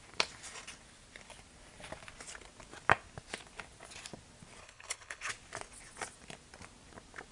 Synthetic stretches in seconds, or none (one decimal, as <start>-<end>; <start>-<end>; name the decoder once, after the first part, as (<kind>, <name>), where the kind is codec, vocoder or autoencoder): 4.6-5.3 (codec, HILCodec)